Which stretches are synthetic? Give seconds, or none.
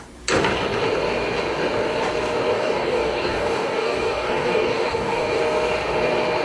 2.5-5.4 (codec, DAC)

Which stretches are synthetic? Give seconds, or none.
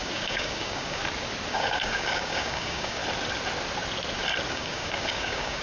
0.0-1.0 (codec, DAC); 1.5-3.0; 4.5-5.6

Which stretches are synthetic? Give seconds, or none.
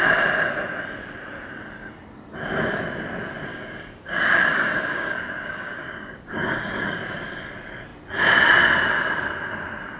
3.5-7.0 (codec, DAC)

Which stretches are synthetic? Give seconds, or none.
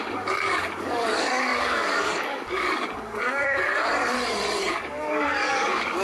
0.0-3.7 (codec, DAC); 4.7-6.0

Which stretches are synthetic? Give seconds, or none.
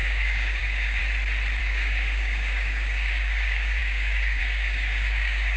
0.0-1.0 (codec, DAC); 1.6-5.6